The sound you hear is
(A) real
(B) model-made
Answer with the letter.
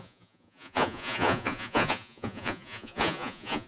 B